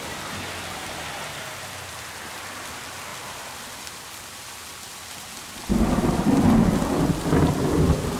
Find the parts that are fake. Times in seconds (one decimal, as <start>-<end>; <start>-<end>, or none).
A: none